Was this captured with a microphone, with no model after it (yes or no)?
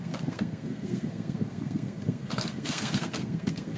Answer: no